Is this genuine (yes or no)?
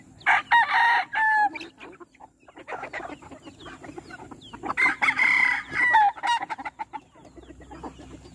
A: yes